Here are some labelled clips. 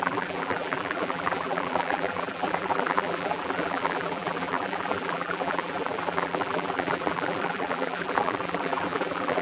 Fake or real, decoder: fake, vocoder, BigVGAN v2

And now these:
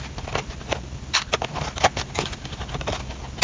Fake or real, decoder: real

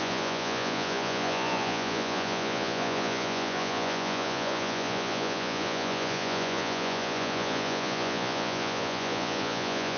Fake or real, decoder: fake, vocoder, Vocos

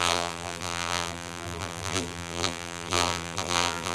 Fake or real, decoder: fake, vocoder, BigVGAN v2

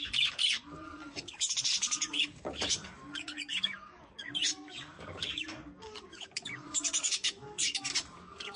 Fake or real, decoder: fake, codec, DAC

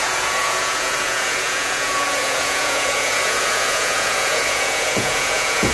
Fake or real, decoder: fake, vocoder, Vocos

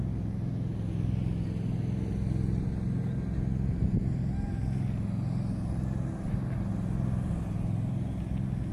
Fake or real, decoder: real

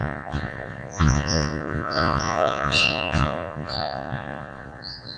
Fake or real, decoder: fake, vocoder, Vocos